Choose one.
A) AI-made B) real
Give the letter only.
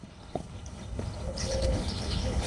A